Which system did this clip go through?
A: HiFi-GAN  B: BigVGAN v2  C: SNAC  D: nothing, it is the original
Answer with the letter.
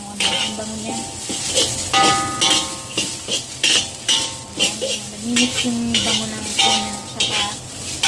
D